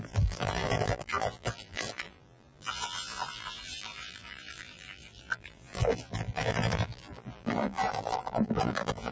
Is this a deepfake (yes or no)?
yes